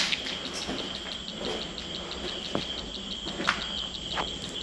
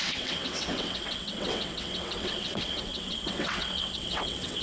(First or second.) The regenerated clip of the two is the second